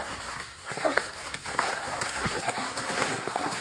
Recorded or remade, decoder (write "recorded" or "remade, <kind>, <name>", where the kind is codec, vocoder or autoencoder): remade, codec, SNAC